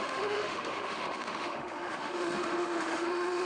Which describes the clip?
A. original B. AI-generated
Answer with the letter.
B